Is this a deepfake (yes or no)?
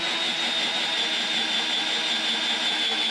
no